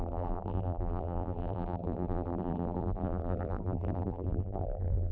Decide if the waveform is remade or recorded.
remade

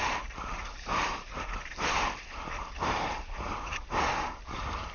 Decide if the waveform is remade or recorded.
remade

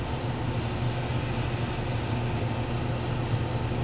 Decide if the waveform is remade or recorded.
recorded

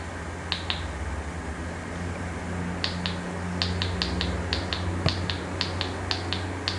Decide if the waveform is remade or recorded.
recorded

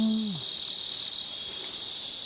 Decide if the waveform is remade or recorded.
recorded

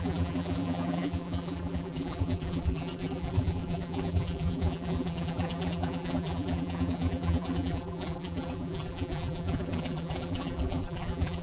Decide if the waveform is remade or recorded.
remade